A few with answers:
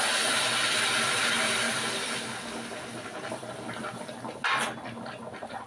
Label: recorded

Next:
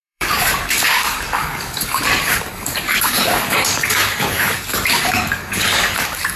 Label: remade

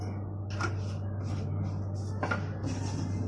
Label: recorded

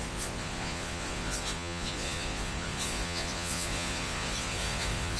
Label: remade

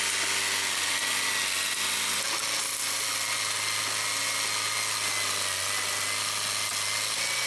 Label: recorded